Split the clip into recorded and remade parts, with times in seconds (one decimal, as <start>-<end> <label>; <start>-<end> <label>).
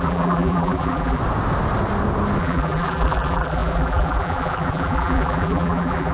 0.0-1.2 remade; 1.2-2.4 recorded; 2.4-6.1 remade